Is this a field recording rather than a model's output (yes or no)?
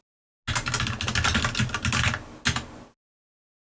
yes